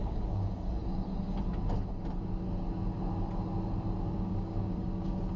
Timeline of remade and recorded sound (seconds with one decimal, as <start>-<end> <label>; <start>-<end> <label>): 0.0-0.8 remade; 0.8-4.0 recorded; 4.0-5.4 remade